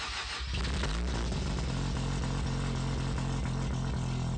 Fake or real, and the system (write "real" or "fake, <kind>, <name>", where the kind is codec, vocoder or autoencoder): real